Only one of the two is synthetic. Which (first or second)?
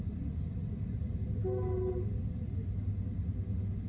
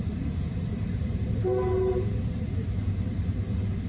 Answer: second